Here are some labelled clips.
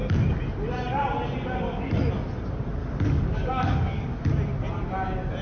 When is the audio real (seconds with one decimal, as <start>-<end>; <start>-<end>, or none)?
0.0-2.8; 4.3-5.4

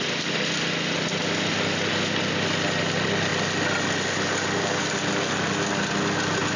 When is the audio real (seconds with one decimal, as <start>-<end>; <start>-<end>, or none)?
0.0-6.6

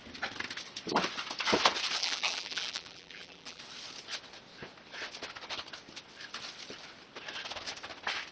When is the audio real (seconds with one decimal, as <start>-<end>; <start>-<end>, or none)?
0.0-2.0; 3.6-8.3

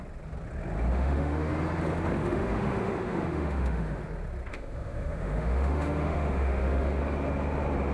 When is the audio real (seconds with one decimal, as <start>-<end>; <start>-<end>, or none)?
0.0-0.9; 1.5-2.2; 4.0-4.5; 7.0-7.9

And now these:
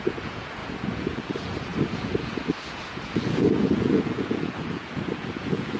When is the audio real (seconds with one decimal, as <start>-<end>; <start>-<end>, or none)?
none

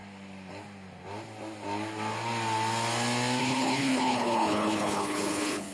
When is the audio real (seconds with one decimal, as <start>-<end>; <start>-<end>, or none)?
0.0-3.4